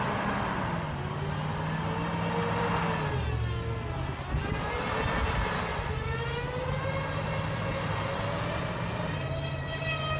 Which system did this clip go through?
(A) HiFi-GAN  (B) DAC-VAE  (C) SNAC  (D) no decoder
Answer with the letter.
D